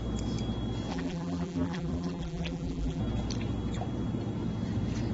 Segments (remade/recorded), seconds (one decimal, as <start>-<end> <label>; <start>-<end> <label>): 0.0-0.9 recorded; 0.9-3.0 remade; 3.0-5.1 recorded

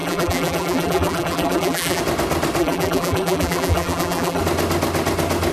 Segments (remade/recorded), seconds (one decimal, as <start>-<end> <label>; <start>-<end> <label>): 0.0-2.0 remade; 2.0-2.6 recorded; 2.6-4.4 remade; 4.4-5.5 recorded

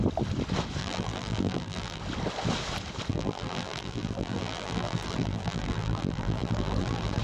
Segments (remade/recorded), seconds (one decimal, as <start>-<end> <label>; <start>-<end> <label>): 0.0-0.8 recorded; 0.8-2.0 remade; 2.0-3.1 recorded; 3.1-7.2 remade

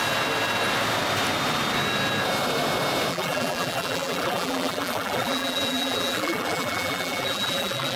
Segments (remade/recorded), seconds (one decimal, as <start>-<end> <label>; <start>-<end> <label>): 0.0-3.1 recorded; 3.1-8.0 remade

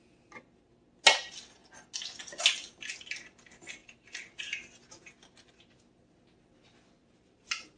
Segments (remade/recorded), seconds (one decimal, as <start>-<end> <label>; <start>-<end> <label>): 0.0-3.8 recorded; 3.8-4.5 remade; 4.5-7.0 recorded; 7.0-7.8 remade

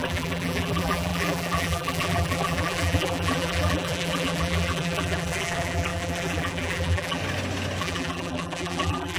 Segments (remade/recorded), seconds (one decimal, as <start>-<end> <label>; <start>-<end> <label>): 0.0-7.2 remade; 7.2-7.8 recorded; 7.8-9.2 remade

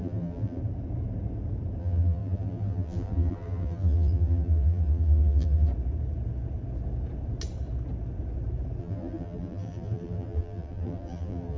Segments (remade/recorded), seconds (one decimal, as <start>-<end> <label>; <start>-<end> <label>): 0.0-0.6 remade; 0.6-1.8 recorded; 1.8-5.7 remade; 5.7-8.8 recorded; 8.8-11.6 remade

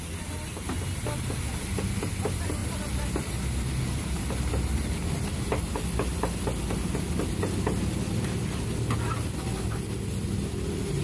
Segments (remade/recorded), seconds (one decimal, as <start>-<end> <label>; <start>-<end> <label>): 0.0-2.6 recorded; 2.6-3.4 remade; 3.4-11.0 recorded